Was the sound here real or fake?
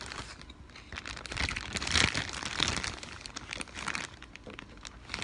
real